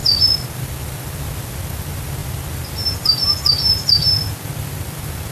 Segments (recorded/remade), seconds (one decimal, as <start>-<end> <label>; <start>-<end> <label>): 0.0-5.3 recorded